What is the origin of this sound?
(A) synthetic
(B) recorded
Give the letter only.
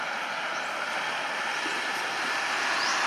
B